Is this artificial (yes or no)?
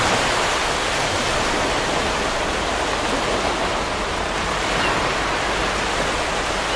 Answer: no